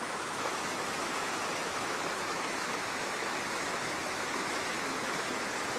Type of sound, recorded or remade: remade